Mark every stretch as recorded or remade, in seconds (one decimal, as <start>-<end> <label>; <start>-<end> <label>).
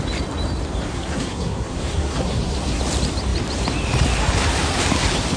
0.0-0.9 recorded; 0.9-2.8 remade; 2.8-5.4 recorded